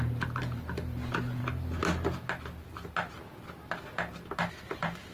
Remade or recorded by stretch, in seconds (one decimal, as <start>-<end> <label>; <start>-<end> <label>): 0.0-1.4 remade; 1.4-4.5 recorded; 4.5-5.1 remade